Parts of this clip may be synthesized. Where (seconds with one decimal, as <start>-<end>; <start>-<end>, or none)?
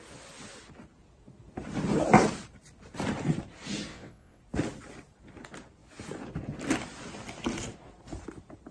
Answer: 3.9-4.4